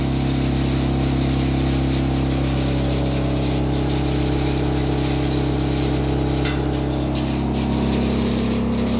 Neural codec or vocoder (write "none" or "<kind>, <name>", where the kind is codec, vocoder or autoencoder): none